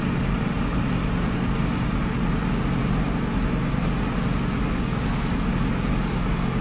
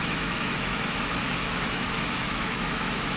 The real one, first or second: first